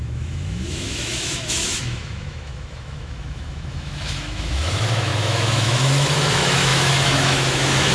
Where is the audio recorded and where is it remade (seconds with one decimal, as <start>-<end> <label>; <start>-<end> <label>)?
0.0-7.9 remade

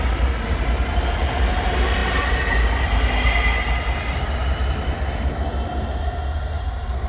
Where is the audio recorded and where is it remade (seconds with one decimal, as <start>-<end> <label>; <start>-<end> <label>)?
0.0-7.1 recorded

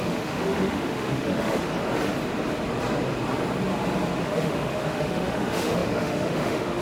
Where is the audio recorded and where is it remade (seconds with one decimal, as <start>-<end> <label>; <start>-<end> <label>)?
0.0-1.7 remade; 1.7-4.2 recorded; 4.2-6.8 remade

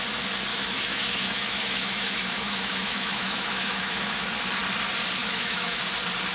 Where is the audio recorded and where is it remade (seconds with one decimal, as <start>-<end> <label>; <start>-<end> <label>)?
0.0-0.5 recorded; 0.5-4.3 remade; 4.3-5.2 recorded; 5.2-5.8 remade; 5.8-6.3 recorded

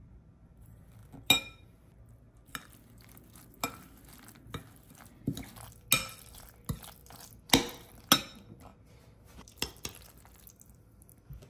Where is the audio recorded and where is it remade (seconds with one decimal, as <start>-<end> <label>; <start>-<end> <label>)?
0.0-11.5 recorded

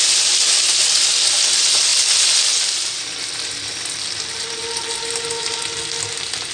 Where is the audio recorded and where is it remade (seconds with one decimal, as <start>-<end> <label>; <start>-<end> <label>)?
0.0-6.5 recorded

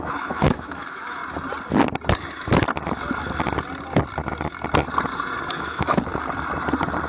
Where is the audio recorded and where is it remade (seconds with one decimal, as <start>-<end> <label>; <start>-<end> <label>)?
0.0-1.2 remade; 1.2-5.5 recorded; 5.5-6.1 remade; 6.1-7.1 recorded

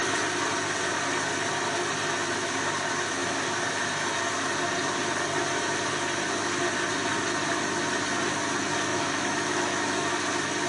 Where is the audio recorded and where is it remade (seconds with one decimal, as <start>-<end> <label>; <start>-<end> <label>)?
0.0-8.9 recorded; 8.9-10.1 remade; 10.1-10.7 recorded